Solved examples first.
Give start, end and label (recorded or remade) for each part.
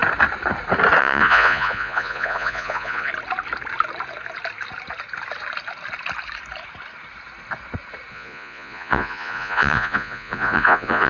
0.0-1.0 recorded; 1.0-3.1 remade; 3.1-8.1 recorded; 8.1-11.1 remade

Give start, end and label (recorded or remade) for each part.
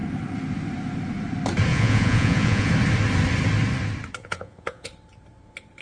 0.0-1.7 recorded; 1.7-2.7 remade; 2.7-4.2 recorded; 4.2-4.9 remade; 4.9-5.8 recorded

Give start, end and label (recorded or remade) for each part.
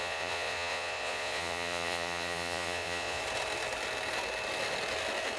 0.0-3.2 remade; 3.2-5.4 recorded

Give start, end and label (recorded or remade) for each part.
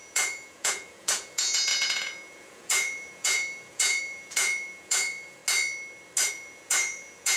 0.0-5.4 remade; 5.4-6.3 recorded; 6.3-7.4 remade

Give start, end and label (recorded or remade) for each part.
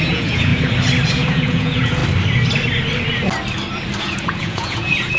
0.0-0.5 remade; 0.5-1.1 recorded; 1.1-2.0 remade; 2.0-4.0 recorded; 4.0-5.2 remade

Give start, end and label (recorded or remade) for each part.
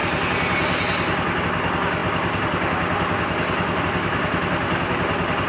0.0-5.5 recorded